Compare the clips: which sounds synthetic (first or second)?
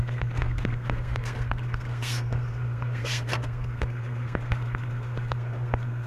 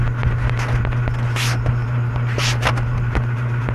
first